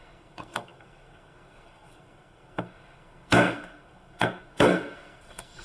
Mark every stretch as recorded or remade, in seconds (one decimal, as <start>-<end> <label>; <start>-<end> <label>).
0.0-5.6 remade